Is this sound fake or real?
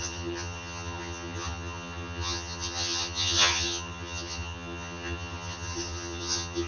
fake